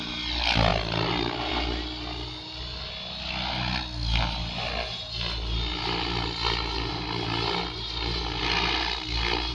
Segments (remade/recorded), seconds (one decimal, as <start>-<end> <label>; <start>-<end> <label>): 0.0-9.5 recorded